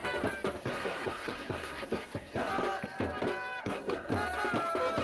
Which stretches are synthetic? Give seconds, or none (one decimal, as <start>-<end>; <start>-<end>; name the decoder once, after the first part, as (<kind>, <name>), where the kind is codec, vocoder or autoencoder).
0.6-2.5 (codec, SNAC); 3.6-4.1